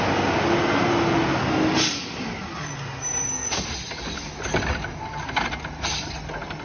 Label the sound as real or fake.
real